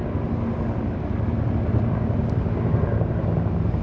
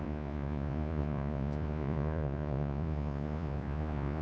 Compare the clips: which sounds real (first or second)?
first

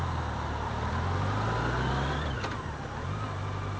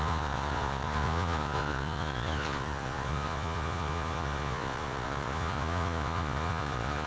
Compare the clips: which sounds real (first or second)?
first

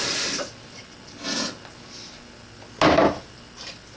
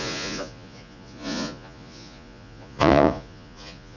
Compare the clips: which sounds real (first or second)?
first